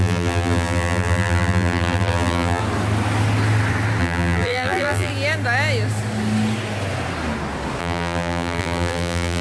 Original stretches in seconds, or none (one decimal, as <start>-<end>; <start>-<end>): 2.6-4.0; 5.1-7.8